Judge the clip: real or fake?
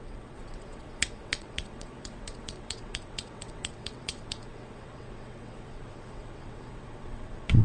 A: fake